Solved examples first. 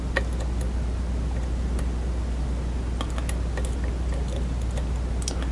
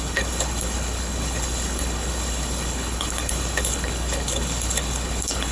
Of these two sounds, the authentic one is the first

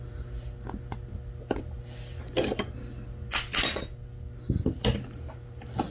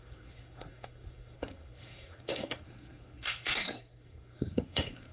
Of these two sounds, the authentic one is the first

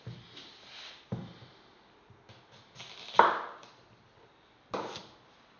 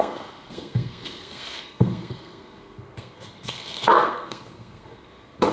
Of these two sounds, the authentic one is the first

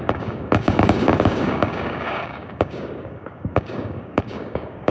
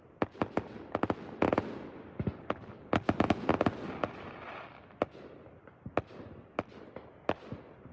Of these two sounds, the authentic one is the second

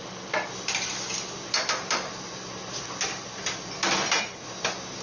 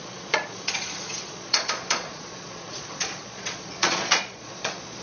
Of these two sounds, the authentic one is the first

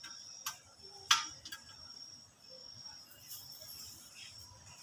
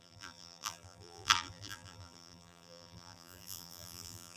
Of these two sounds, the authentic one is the first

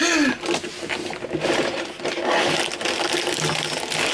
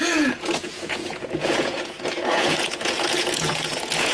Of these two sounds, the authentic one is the first